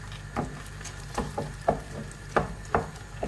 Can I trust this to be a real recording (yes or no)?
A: yes